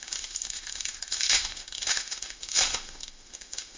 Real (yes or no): no